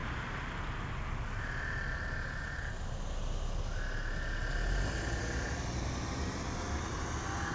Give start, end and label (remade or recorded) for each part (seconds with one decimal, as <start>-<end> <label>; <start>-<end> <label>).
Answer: 0.0-7.5 recorded